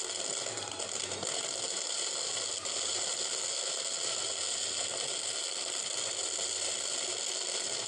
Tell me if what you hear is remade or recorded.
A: recorded